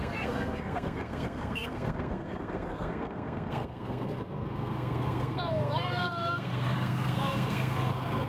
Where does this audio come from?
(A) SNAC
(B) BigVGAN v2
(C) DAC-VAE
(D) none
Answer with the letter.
A